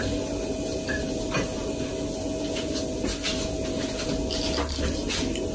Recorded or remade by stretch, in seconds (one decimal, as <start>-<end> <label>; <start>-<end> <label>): 0.0-5.5 recorded